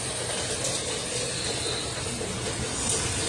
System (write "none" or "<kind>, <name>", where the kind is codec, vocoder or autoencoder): none